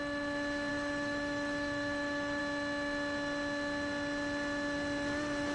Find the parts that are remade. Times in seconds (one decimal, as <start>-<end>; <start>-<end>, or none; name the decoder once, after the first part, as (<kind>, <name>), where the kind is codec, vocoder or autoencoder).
0.7-2.4 (autoencoder, DAC-VAE)